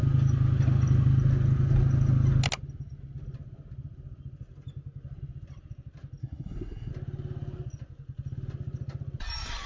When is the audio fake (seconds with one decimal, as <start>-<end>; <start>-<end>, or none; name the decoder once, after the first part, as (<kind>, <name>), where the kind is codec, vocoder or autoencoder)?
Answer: 6.2-6.9 (codec, SNAC)